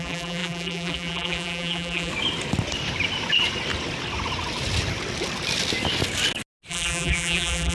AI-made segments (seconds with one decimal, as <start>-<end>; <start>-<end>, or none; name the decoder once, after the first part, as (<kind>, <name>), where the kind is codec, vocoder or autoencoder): 0.0-2.1 (vocoder, BigVGAN v2); 6.7-7.7